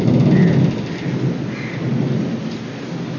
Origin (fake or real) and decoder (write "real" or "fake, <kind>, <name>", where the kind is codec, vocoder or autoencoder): real